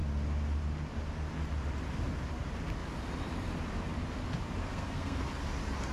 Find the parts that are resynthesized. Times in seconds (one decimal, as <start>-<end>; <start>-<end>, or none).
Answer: 4.6-5.3